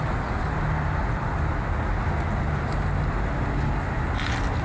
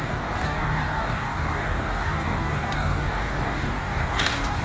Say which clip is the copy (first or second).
second